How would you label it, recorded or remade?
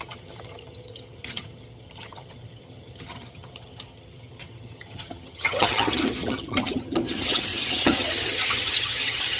remade